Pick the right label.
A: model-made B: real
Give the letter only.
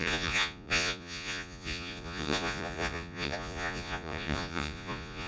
A